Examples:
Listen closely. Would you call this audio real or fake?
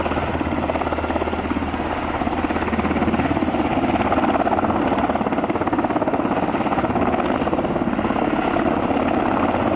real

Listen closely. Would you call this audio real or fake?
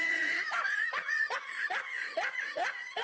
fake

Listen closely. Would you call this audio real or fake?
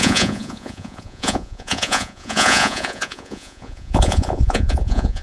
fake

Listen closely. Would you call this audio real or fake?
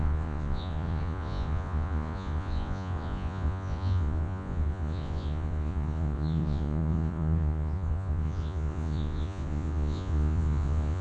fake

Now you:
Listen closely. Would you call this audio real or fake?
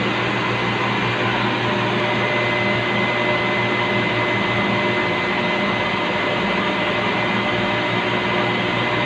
real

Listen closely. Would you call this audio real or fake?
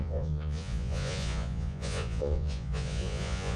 fake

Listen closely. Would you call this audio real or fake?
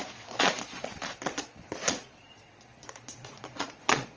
fake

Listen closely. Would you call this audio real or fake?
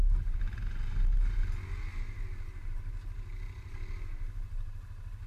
real